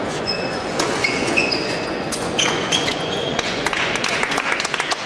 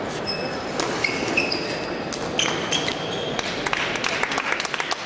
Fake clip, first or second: first